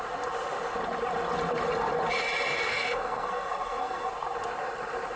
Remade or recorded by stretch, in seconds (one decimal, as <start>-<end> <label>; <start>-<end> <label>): 0.0-2.5 recorded; 2.5-4.1 remade; 4.1-5.2 recorded